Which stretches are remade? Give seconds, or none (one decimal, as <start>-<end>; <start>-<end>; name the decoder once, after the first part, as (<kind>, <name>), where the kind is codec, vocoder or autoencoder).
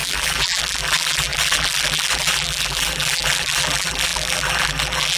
0.0-5.2 (vocoder, BigVGAN v2)